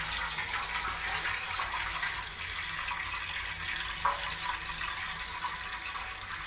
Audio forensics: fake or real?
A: real